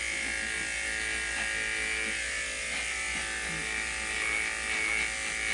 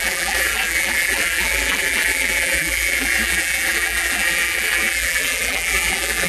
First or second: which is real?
first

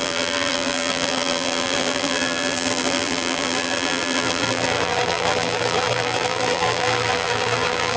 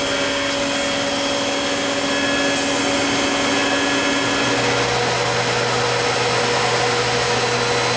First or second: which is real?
second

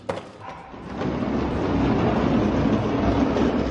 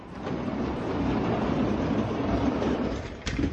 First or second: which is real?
first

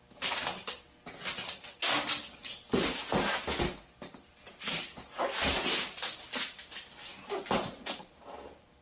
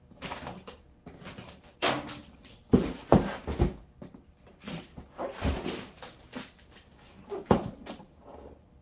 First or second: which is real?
first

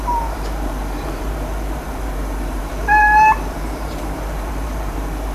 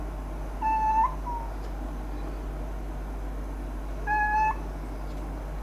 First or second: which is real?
second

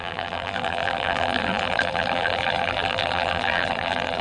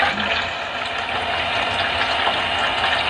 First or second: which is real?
second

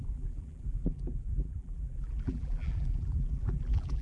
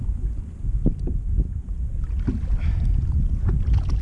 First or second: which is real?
second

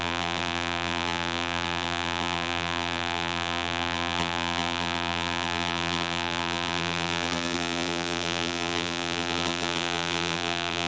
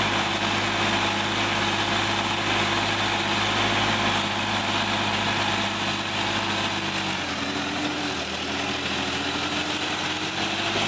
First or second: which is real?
second